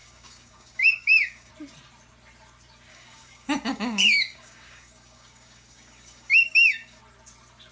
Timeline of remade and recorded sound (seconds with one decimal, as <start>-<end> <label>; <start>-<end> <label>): 0.0-1.5 remade; 1.5-2.9 recorded; 2.9-7.0 remade; 7.0-7.7 recorded